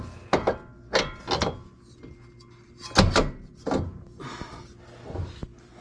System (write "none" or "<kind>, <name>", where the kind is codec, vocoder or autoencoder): none